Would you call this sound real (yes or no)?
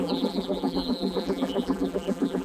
no